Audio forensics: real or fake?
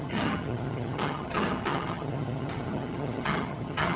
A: fake